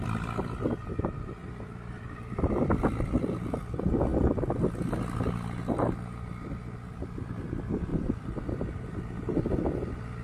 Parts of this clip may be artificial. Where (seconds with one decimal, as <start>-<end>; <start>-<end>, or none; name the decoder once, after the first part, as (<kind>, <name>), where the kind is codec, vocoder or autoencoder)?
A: 1.4-3.6 (vocoder, BigVGAN v2); 4.1-4.6; 7.9-9.0